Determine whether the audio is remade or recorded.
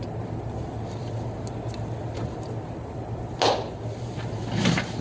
recorded